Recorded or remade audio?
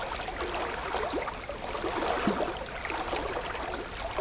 recorded